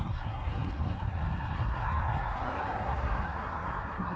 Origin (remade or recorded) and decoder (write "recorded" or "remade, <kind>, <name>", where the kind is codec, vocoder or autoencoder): remade, codec, SNAC